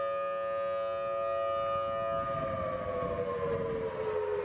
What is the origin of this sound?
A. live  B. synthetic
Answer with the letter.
A